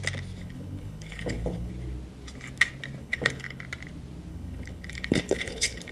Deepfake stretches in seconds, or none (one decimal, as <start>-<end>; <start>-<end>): 0.4-1.7; 3.0-3.6; 4.3-5.9

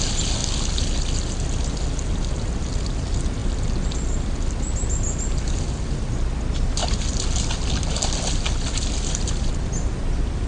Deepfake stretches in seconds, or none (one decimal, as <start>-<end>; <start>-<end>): none

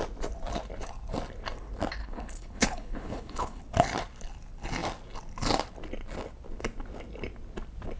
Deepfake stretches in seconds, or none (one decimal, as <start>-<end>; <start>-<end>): 2.0-3.6

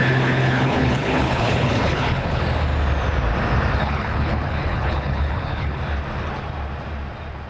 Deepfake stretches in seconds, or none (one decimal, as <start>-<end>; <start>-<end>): 0.0-2.4; 3.8-5.8

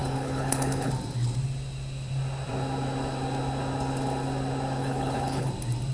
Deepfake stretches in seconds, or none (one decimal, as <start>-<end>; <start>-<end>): 0.0-0.9; 4.8-5.5